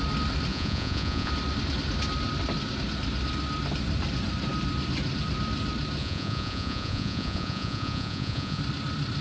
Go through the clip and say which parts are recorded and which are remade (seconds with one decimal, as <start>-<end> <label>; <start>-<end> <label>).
0.0-0.5 recorded; 0.5-1.3 remade; 1.3-6.0 recorded; 6.0-8.6 remade; 8.6-9.2 recorded